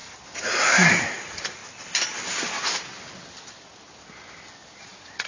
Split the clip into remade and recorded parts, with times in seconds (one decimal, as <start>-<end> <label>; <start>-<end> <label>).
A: 0.0-0.9 recorded; 0.9-1.6 remade; 1.6-4.8 recorded; 4.8-5.3 remade